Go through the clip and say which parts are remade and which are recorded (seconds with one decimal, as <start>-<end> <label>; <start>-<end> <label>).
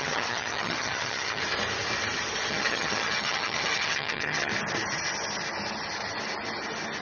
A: 0.0-1.4 remade; 1.4-2.5 recorded; 2.5-4.5 remade; 4.5-7.0 recorded